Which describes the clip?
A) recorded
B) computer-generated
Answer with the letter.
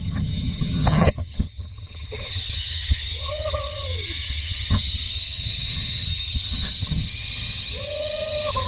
B